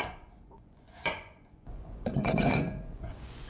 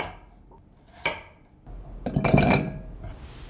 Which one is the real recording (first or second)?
second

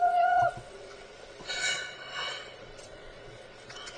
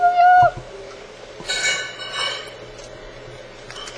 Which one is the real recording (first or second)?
second